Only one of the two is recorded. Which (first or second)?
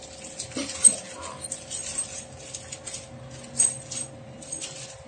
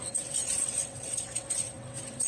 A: first